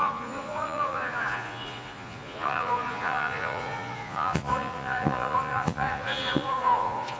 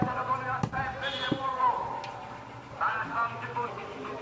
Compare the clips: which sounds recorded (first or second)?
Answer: second